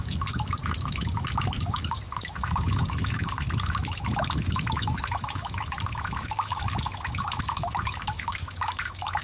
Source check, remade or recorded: remade